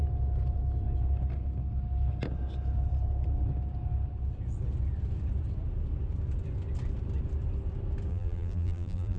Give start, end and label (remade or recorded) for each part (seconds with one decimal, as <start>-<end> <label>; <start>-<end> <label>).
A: 0.0-8.1 recorded; 8.1-9.2 remade